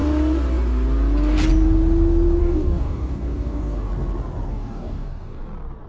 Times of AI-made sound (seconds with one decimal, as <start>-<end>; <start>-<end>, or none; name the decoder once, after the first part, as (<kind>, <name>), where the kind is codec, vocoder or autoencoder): 2.4-3.9 (codec, DAC); 4.5-5.4